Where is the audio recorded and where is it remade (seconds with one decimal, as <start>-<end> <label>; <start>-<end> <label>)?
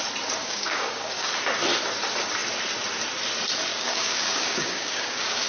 0.0-0.4 recorded; 0.4-1.3 remade; 1.3-3.7 recorded; 3.7-5.5 remade